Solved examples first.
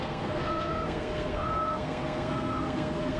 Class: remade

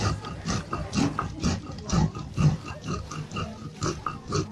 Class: recorded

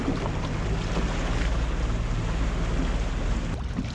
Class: recorded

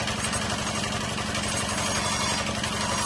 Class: recorded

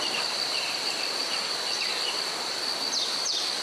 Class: recorded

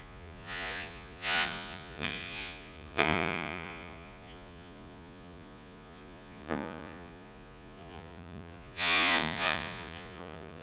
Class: remade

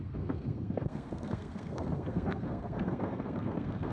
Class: remade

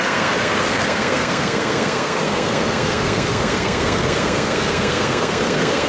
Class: remade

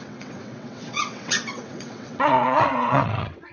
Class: remade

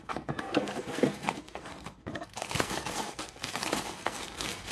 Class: remade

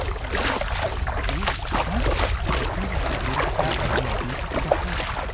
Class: recorded